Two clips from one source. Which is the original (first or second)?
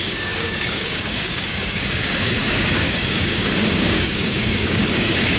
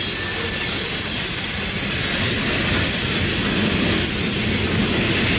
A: second